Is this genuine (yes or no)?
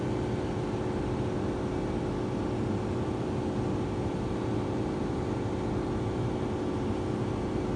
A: yes